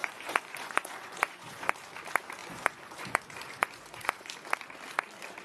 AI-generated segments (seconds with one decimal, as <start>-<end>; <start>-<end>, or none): 0.0-1.7; 2.4-4.3